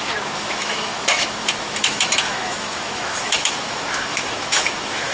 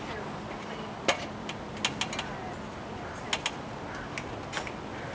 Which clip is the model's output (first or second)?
first